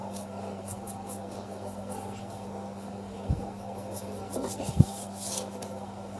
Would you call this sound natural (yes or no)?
no